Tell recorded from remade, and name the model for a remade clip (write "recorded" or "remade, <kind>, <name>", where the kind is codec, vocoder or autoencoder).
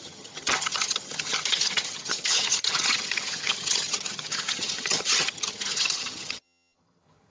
remade, vocoder, HiFi-GAN